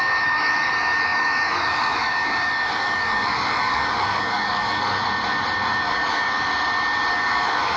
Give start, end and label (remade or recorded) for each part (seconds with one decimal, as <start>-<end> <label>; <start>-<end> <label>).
0.0-5.0 remade; 5.0-5.8 recorded; 5.8-6.5 remade; 6.5-7.1 recorded; 7.1-7.8 remade